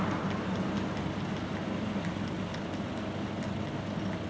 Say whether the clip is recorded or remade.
recorded